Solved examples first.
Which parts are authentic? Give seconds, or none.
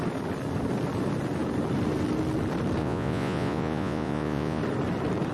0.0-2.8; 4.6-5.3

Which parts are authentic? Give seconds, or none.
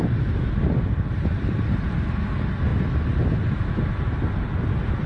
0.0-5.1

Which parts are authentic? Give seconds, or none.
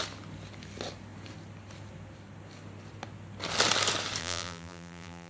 0.0-4.2